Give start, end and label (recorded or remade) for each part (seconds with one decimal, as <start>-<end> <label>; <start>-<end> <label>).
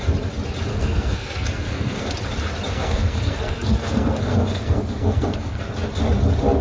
0.0-0.7 recorded; 0.7-2.1 remade; 2.1-2.7 recorded; 2.7-5.7 remade; 5.7-6.6 recorded